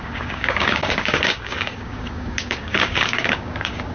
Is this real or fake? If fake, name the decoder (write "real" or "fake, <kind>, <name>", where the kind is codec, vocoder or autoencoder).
fake, codec, DAC